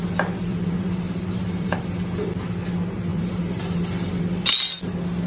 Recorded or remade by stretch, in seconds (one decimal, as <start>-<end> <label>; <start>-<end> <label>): 0.0-0.5 recorded; 0.5-1.9 remade; 1.9-3.1 recorded; 3.1-4.2 remade; 4.2-5.3 recorded